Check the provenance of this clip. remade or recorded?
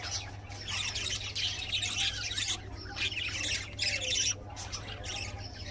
recorded